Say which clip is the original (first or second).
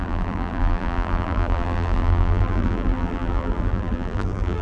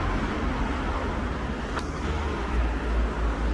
second